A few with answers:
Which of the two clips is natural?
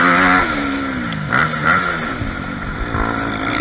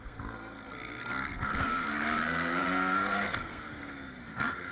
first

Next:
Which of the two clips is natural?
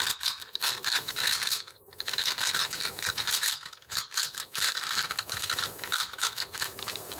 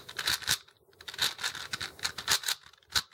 second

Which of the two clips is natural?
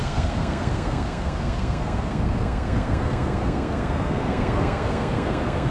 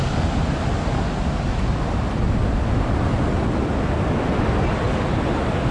second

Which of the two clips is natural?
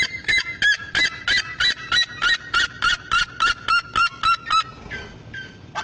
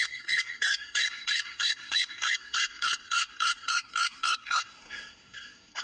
first